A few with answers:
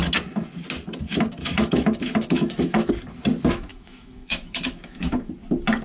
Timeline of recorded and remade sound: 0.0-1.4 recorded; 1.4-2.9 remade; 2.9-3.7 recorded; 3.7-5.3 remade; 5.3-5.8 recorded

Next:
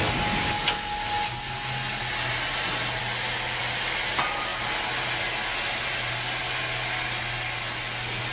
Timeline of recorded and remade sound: 0.0-8.3 recorded

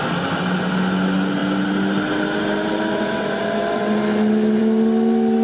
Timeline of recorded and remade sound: 0.0-5.4 recorded

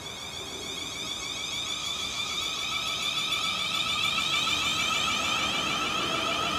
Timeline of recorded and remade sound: 0.0-1.8 recorded; 1.8-2.4 remade; 2.4-6.6 recorded

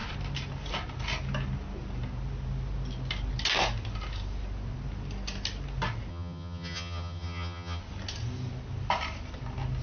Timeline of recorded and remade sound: 0.0-6.1 recorded; 6.1-7.8 remade; 7.8-9.8 recorded

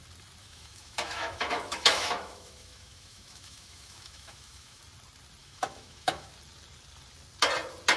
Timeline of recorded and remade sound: 0.0-0.4 recorded; 0.4-4.8 remade; 4.8-5.4 recorded; 5.4-6.3 remade; 6.3-8.0 recorded

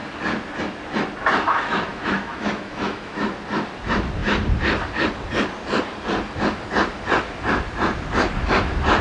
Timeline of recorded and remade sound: 0.0-1.5 recorded; 1.5-3.3 remade; 3.3-9.0 recorded